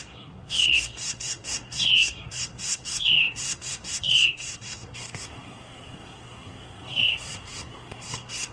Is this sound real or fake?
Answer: fake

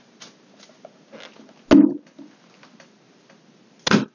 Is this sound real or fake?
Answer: real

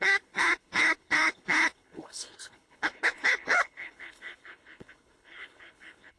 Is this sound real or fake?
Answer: fake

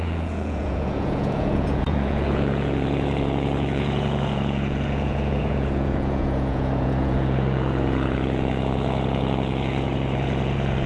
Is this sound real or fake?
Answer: fake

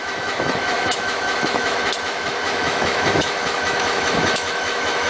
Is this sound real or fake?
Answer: fake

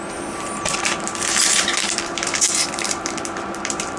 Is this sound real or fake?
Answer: fake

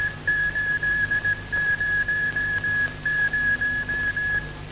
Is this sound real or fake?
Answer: real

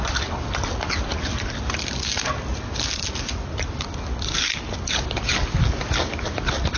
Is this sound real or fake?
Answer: real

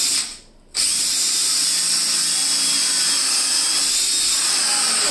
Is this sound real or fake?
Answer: real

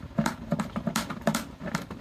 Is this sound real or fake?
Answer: real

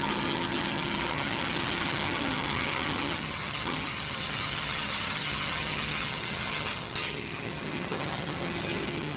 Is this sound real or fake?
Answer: fake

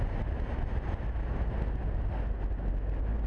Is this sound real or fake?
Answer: real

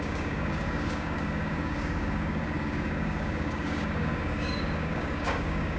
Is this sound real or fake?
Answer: fake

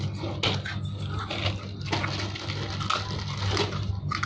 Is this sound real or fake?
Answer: real